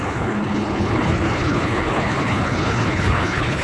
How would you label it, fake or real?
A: fake